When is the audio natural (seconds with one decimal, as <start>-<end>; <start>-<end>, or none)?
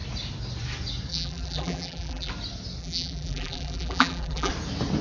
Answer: 0.0-1.1; 2.3-2.8; 4.5-5.0